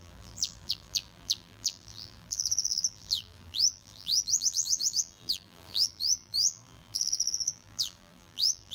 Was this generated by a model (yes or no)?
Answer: yes